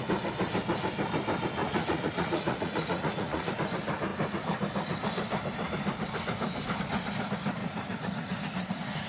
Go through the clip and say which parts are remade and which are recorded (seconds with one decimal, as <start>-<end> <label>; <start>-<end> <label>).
0.0-1.6 recorded; 1.6-3.5 remade; 3.5-7.6 recorded; 7.6-9.1 remade